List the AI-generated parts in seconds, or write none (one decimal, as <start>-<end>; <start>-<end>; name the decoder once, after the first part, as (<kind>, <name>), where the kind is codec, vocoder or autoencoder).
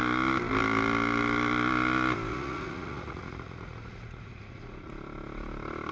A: 2.3-4.9 (vocoder, Vocos)